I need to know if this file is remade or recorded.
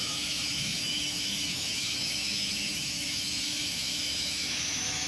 remade